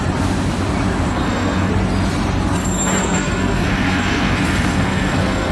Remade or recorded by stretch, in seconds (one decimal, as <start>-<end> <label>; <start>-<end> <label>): 0.0-1.1 recorded; 1.1-1.7 remade; 1.7-3.0 recorded; 3.0-5.5 remade

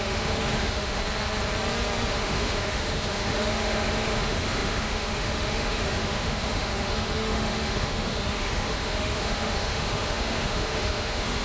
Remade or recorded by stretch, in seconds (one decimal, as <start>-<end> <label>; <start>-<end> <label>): 0.0-1.0 remade; 1.0-2.1 recorded; 2.1-11.4 remade

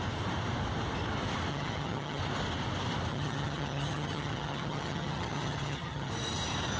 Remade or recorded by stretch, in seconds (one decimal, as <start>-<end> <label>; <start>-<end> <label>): 0.0-1.5 recorded; 1.5-2.2 remade; 2.2-3.1 recorded; 3.1-6.1 remade; 6.1-6.8 recorded

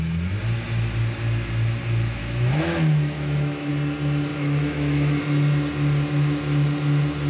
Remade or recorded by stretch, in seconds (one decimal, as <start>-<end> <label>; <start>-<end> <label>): 0.0-2.2 recorded; 2.2-3.7 remade; 3.7-4.3 recorded; 4.3-5.2 remade; 5.2-7.3 recorded